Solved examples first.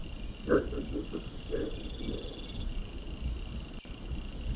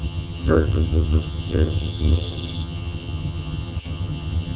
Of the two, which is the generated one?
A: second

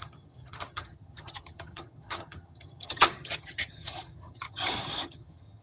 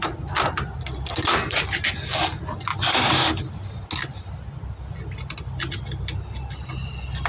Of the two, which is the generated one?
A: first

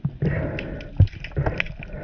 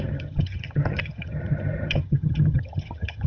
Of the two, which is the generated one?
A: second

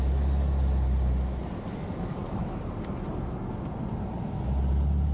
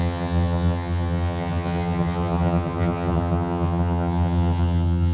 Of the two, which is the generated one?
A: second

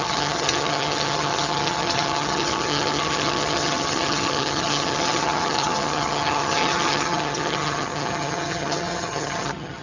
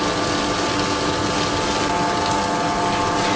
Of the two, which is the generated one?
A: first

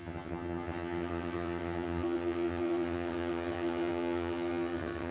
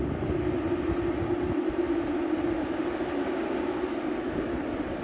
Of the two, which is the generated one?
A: first